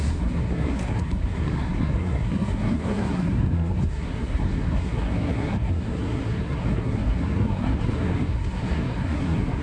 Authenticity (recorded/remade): remade